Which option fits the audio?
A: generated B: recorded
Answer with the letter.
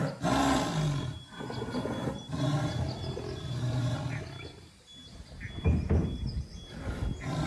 B